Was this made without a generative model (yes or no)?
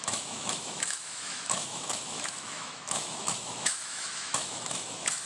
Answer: no